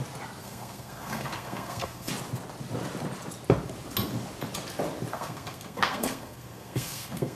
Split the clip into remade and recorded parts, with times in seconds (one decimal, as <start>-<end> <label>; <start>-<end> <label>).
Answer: 0.0-0.4 recorded; 0.4-2.1 remade; 2.1-5.1 recorded; 5.1-7.4 remade